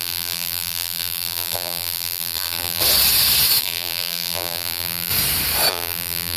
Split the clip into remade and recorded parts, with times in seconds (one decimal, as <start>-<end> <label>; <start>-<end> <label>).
0.0-2.8 remade; 2.8-3.6 recorded; 3.6-5.1 remade; 5.1-5.7 recorded; 5.7-6.4 remade